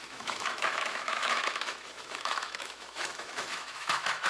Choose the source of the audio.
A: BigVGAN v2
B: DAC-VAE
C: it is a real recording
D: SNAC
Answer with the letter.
B